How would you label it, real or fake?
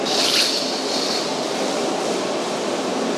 fake